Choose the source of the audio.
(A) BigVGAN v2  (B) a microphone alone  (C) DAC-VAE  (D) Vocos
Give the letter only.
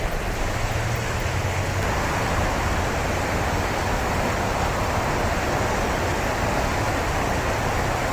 B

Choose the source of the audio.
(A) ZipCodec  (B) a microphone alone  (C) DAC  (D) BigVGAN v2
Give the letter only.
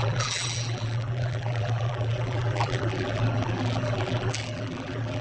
D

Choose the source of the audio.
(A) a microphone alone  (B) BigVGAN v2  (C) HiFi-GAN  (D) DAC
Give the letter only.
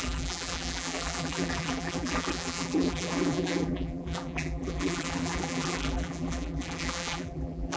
B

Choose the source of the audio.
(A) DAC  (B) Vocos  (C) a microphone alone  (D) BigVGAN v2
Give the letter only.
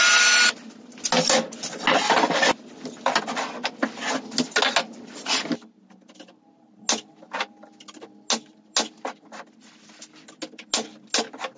C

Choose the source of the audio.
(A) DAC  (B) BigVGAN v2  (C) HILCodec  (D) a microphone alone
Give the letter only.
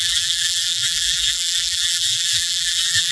B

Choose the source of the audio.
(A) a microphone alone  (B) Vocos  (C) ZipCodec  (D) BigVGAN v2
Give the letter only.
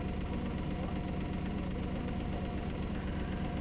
A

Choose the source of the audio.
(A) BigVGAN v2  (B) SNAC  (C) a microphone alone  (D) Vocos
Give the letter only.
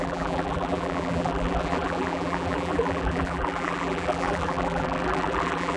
A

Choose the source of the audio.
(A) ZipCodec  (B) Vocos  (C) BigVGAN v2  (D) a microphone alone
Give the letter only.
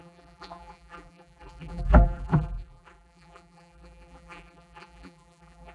C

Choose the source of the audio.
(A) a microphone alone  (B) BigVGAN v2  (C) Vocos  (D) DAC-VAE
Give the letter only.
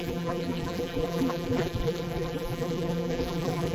B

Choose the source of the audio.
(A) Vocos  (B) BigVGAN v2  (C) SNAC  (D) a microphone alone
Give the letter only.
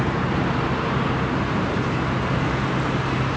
D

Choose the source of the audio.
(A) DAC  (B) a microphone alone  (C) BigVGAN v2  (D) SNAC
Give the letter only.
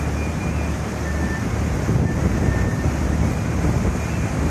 B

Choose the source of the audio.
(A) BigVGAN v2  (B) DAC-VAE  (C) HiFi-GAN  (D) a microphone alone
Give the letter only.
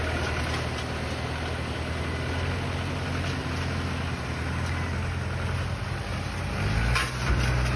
D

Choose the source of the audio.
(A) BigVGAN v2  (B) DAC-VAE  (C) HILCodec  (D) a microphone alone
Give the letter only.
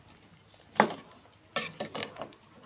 D